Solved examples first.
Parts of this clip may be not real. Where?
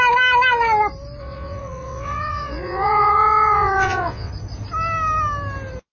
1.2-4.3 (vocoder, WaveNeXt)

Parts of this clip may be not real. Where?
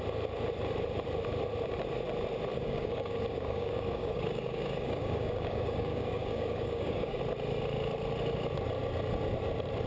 2.5-7.2 (codec, DAC)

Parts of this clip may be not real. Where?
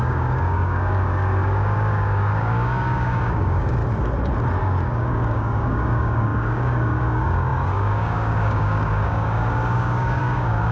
0.0-3.8 (codec, DAC); 4.6-10.7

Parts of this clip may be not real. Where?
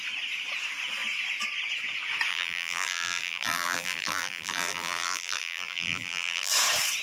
2.3-6.5 (vocoder, BigVGAN v2)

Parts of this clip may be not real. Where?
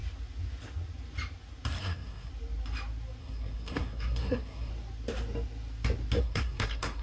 1.8-2.3 (codec, SNAC); 3.2-4.7; 6.2-7.0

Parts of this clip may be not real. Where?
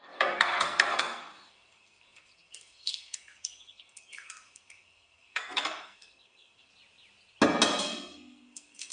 0.0-6.7 (codec, SNAC); 7.8-8.9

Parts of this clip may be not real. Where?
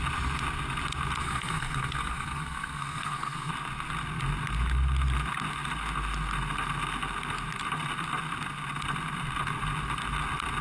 1.2-3.5 (codec, SNAC)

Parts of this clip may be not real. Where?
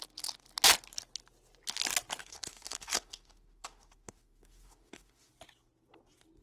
2.2-5.3 (autoencoder, DAC-VAE)